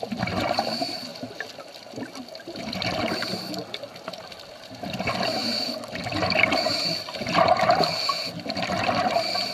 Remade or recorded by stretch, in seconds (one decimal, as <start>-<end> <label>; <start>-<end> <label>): 0.0-9.5 recorded